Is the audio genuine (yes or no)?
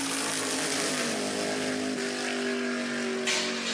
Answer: yes